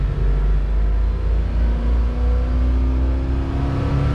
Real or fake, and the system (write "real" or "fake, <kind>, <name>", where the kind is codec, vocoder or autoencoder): real